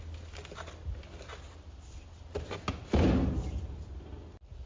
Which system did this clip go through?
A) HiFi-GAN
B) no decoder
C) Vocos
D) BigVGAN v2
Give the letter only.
B